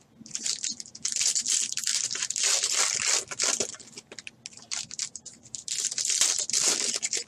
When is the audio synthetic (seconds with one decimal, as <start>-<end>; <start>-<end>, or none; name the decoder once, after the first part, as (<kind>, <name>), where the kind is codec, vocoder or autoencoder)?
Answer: none

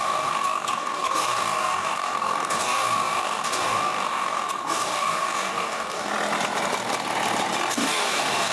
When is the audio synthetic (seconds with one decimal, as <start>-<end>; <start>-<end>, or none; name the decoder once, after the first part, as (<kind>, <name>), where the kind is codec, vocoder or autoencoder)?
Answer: 0.0-6.1 (codec, DAC); 7.7-8.5

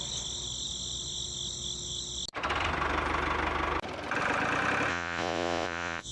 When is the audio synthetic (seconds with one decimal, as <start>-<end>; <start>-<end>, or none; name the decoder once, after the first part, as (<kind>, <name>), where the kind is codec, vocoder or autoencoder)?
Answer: 4.9-6.1 (vocoder, Vocos)

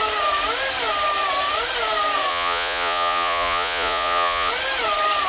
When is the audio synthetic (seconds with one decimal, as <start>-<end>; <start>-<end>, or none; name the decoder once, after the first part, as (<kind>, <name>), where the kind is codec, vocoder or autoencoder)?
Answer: 2.3-4.5 (vocoder, Vocos)

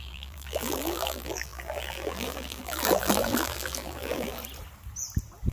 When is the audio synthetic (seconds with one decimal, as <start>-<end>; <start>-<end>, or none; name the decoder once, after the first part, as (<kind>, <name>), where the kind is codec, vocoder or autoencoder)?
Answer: 0.0-4.4 (vocoder, BigVGAN v2)

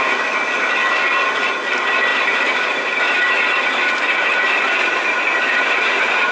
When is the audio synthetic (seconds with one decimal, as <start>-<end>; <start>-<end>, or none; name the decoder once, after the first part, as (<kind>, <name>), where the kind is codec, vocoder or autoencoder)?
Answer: 2.1-6.3 (vocoder, BigVGAN v2)

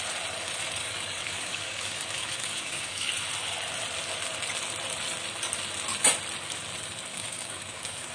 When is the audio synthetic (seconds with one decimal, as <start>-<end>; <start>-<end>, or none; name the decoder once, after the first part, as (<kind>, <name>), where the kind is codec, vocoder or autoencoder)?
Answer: 0.8-3.1 (codec, DAC); 7.1-8.1